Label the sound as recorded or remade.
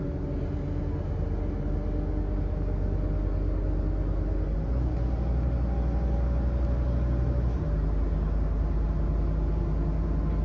recorded